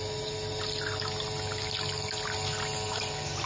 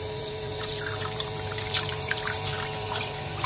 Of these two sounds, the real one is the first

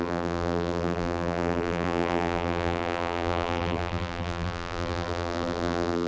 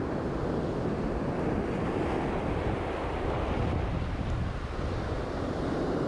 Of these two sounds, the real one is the second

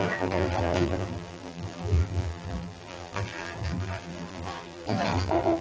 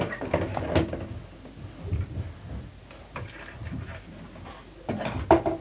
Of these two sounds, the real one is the second